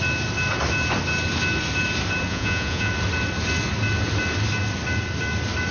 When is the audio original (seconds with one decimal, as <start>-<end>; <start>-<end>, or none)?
0.0-2.3; 2.9-5.7